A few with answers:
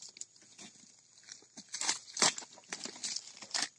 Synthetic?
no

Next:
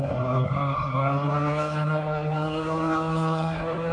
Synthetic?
yes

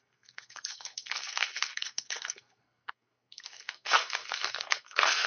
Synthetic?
yes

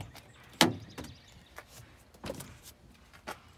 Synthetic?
no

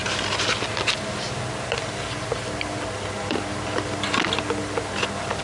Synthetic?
no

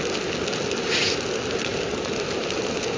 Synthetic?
no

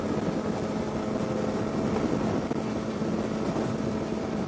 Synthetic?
no